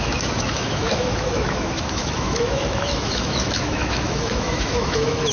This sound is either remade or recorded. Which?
remade